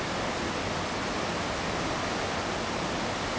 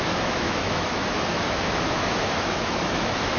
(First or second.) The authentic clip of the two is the first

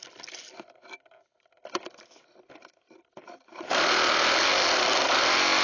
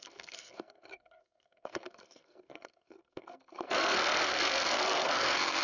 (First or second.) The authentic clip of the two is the first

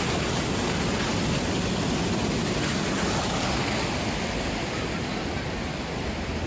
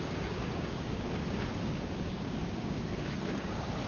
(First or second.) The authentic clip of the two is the first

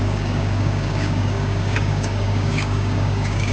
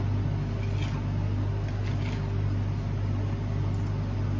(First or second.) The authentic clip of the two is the second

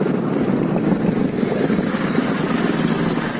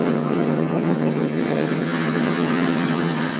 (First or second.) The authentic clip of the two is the first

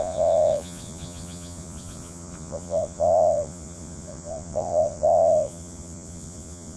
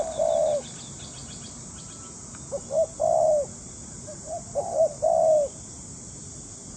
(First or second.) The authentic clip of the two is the second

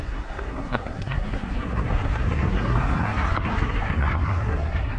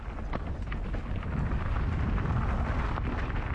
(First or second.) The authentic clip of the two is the second